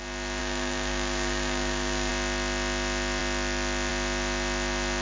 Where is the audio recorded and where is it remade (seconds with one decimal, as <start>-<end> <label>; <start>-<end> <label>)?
0.0-0.4 recorded; 0.4-2.1 remade; 2.1-5.0 recorded